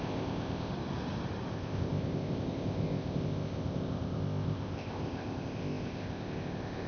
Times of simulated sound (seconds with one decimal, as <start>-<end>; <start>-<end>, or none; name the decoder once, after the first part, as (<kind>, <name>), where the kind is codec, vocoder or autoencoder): 0.0-0.7 (codec, ZipCodec); 1.5-6.9